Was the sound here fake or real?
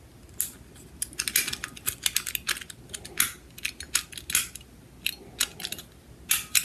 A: real